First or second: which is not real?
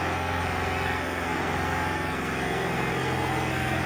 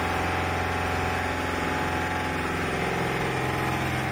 first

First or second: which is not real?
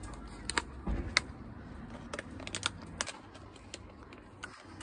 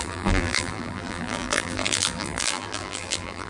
second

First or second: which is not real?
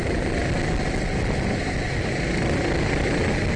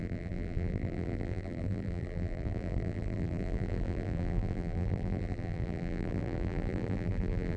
second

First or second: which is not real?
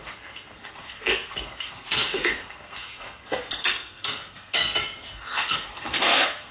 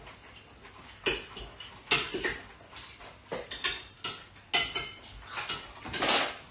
first